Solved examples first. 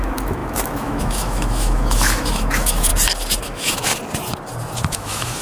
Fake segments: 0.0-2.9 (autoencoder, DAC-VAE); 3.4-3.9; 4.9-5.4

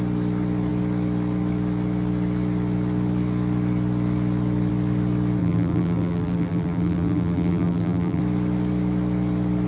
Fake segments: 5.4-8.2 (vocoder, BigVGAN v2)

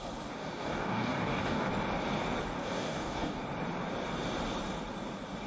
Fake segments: 0.4-1.7 (codec, DAC); 2.6-3.4

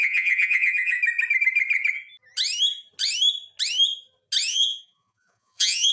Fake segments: 0.0-1.0 (vocoder, Vocos); 4.5-5.9